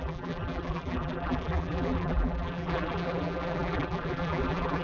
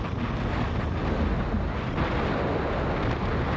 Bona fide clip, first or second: second